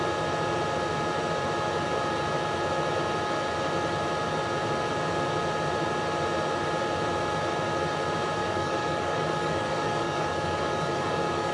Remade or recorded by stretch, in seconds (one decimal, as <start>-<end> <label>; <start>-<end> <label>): 0.0-8.4 recorded; 8.4-11.5 remade